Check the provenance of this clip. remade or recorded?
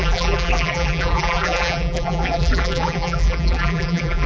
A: remade